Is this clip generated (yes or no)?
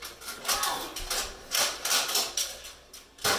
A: no